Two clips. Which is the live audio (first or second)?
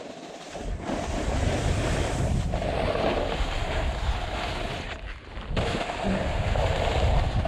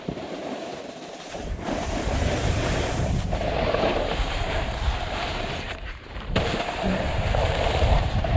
first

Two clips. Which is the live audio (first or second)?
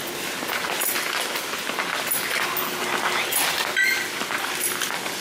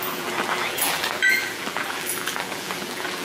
first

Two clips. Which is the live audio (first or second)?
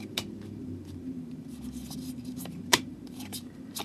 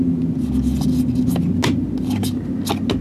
second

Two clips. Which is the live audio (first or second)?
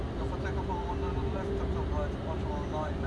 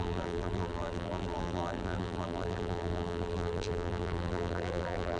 first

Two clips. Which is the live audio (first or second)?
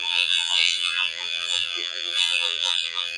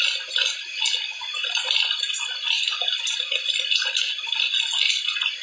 second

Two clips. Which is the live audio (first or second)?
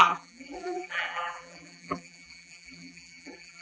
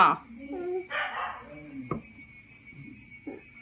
second